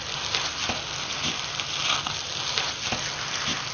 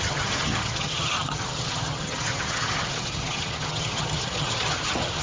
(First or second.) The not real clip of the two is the second